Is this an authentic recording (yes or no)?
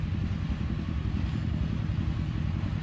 yes